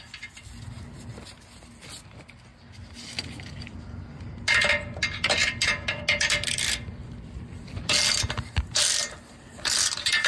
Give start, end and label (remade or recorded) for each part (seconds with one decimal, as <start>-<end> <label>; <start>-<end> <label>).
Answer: 0.0-10.3 recorded